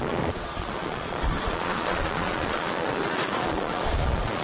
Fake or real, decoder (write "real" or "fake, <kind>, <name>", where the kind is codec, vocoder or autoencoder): fake, vocoder, Vocos